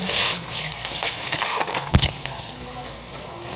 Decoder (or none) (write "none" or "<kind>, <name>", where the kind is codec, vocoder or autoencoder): codec, SNAC